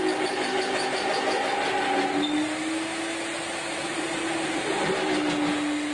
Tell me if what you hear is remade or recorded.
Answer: recorded